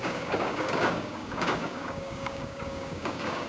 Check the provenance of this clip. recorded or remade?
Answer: remade